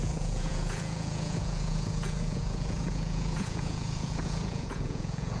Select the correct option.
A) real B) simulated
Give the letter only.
B